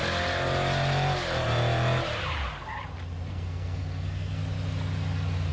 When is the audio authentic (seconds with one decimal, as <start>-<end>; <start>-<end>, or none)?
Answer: 0.0-3.3; 4.4-5.5